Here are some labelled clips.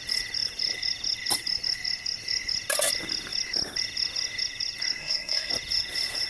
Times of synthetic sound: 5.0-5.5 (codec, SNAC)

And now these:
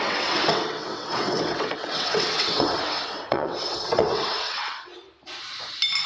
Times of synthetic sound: 0.0-4.9 (vocoder, WaveNeXt)

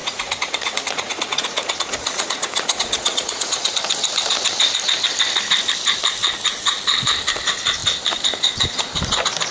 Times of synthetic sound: 0.0-3.5 (vocoder, Vocos)

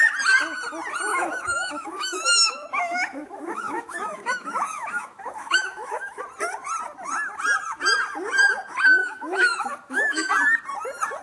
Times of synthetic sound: 1.1-6.2 (autoencoder, DAC-VAE); 9.0-10.3